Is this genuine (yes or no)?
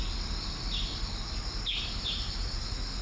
yes